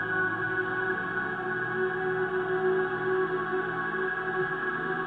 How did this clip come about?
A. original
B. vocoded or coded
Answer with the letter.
A